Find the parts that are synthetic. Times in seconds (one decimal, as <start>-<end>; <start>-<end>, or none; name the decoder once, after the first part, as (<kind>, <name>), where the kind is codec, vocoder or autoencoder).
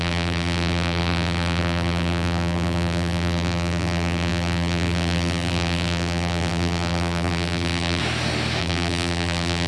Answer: 0.0-8.0 (vocoder, BigVGAN v2); 8.6-9.7